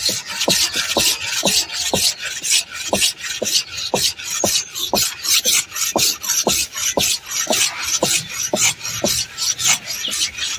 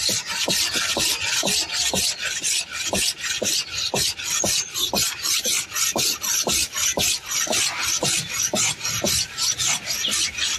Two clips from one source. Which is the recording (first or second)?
first